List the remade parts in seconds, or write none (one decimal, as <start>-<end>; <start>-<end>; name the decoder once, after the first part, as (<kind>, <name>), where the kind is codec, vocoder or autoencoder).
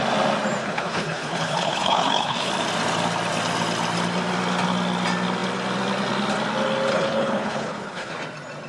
0.6-2.5 (codec, HILCodec); 6.9-8.1